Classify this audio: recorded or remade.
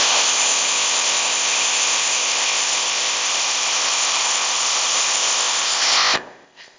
remade